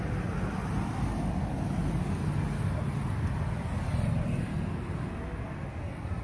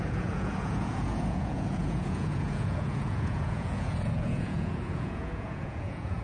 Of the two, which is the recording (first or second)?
first